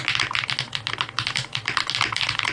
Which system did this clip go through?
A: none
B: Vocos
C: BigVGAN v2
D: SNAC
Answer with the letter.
A